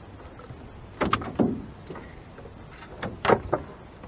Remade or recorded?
recorded